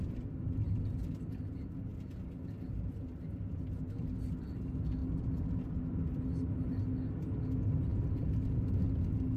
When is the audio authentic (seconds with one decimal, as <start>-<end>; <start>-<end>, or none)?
0.0-9.4